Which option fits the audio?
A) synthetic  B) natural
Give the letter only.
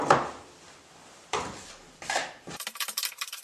A